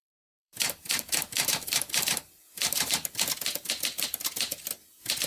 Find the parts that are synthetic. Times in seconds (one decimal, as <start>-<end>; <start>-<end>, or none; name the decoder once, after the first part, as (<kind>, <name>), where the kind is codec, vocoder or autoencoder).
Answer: 0.0-3.2 (vocoder, BigVGAN v2)